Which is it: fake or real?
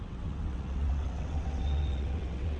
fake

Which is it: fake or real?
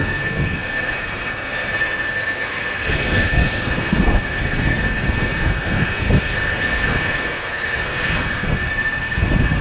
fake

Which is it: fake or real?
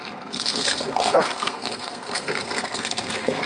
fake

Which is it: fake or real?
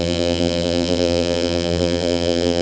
fake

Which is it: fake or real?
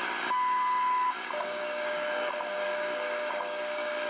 fake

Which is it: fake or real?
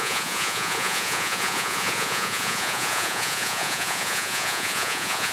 fake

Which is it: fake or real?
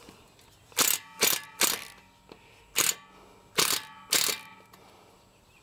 real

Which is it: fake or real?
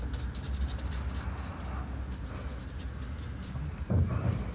real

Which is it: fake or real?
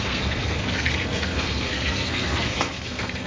fake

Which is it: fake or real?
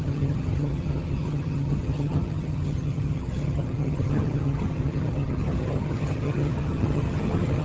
fake